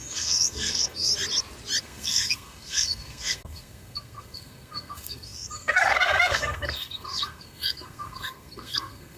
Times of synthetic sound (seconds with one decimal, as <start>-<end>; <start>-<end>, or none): 0.0-1.1; 1.8-9.2